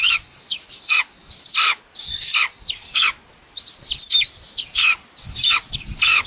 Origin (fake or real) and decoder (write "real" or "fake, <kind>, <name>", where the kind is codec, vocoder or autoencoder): real